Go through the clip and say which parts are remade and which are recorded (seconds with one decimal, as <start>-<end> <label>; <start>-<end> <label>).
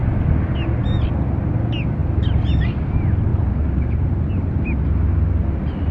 0.0-3.3 recorded; 3.3-4.6 remade; 4.6-5.9 recorded